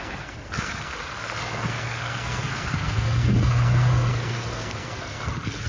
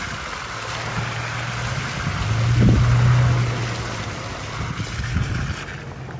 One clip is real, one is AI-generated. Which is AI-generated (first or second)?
first